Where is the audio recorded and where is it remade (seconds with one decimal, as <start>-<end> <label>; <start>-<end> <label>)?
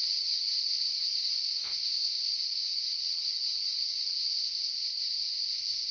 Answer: 0.0-1.4 recorded; 1.4-2.3 remade; 2.3-4.3 recorded; 4.3-4.8 remade; 4.8-5.5 recorded; 5.5-5.9 remade